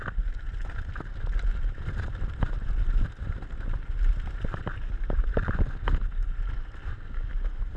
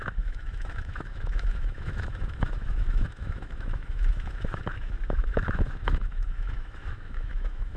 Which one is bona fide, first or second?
first